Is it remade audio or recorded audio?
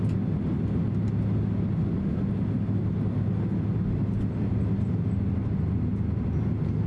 recorded